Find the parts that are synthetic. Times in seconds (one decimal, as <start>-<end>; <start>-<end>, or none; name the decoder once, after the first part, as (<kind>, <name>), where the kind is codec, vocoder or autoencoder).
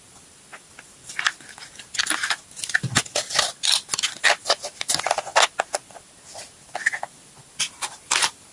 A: none